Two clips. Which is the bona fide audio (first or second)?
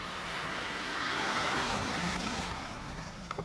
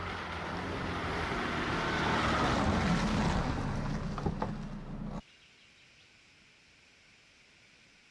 second